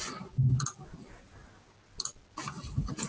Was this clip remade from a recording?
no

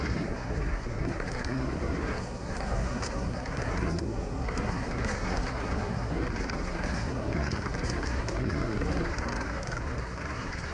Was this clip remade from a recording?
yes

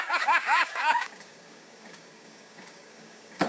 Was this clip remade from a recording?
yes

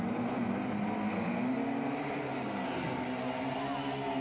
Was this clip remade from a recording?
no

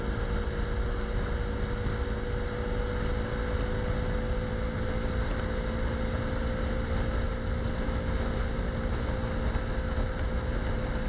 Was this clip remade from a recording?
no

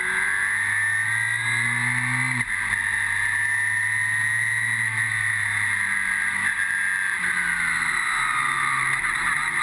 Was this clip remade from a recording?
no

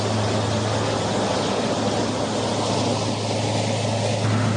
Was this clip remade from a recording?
no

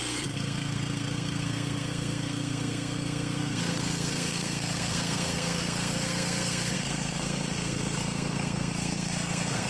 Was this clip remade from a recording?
yes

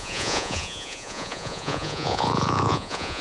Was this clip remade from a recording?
yes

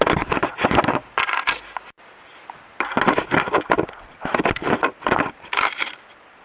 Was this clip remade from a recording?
no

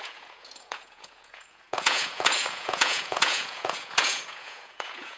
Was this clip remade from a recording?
yes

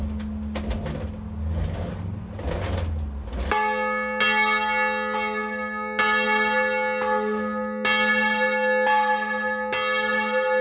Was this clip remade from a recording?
no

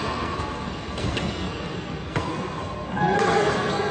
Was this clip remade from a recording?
yes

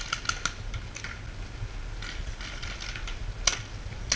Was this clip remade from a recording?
no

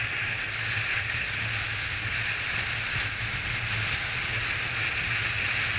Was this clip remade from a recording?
no